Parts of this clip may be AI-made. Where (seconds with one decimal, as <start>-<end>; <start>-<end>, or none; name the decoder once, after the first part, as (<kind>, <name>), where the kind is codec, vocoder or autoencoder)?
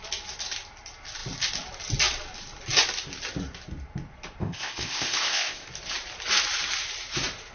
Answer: 4.4-5.7 (codec, ZipCodec)